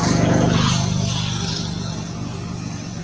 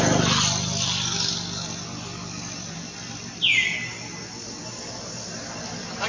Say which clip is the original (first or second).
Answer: second